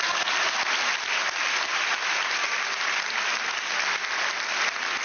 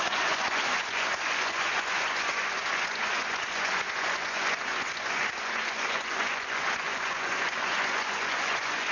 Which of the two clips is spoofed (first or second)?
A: second